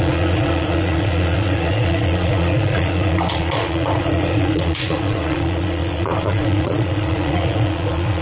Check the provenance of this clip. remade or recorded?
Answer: remade